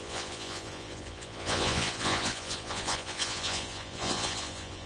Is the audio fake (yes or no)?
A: yes